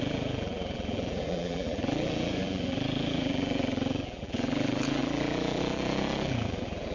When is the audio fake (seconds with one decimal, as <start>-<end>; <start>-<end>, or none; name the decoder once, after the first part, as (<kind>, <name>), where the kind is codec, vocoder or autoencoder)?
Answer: 0.0-6.9 (vocoder, BigVGAN v2)